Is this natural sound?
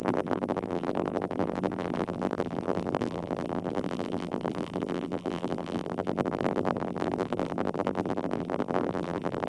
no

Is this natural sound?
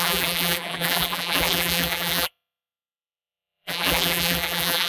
no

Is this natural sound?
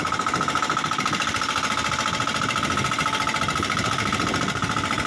yes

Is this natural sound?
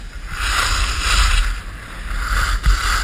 yes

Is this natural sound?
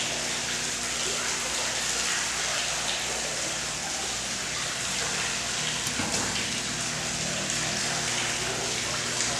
yes